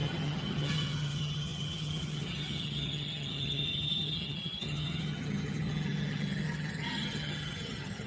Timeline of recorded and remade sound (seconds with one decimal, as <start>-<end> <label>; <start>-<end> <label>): 0.0-8.1 remade